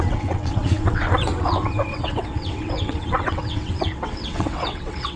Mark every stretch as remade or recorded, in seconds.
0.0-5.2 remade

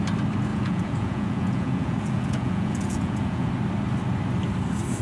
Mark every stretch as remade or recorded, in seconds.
0.0-0.5 recorded; 0.5-3.5 remade; 3.5-5.0 recorded

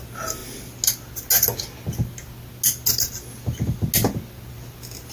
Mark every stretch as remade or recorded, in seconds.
0.0-5.1 recorded

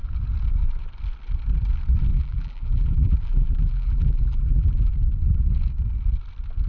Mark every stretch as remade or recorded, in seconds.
0.0-2.1 recorded; 2.1-4.9 remade; 4.9-6.7 recorded

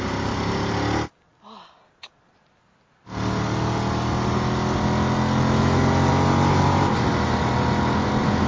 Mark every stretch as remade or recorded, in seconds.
0.0-8.5 recorded

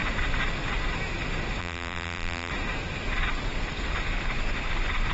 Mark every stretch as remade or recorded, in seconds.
0.0-1.6 recorded; 1.6-2.5 remade; 2.5-5.1 recorded